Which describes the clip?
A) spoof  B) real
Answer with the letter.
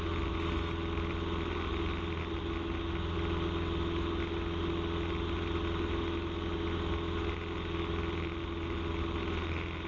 B